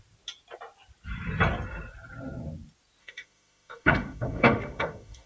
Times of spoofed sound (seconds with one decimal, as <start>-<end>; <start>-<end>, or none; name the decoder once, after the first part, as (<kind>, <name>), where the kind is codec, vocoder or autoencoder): 3.0-5.3 (autoencoder, DAC-VAE)